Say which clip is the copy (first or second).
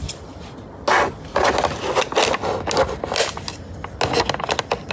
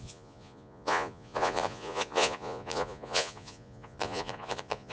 second